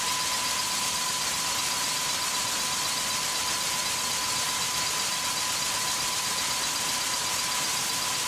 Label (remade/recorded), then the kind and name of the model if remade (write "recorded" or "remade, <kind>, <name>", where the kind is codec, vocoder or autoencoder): recorded